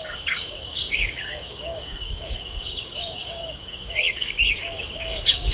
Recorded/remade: remade